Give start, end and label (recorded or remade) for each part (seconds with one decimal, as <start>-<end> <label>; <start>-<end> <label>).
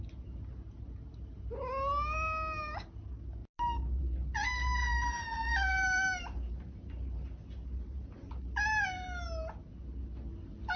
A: 0.0-4.9 recorded; 4.9-8.3 remade; 8.3-10.8 recorded